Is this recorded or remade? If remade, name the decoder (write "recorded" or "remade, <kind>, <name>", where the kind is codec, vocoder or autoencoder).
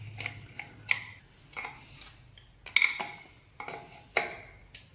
recorded